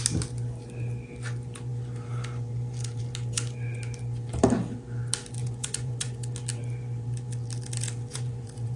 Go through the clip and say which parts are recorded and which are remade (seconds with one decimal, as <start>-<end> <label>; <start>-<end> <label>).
0.0-5.4 recorded; 5.4-6.2 remade; 6.2-8.1 recorded; 8.1-8.8 remade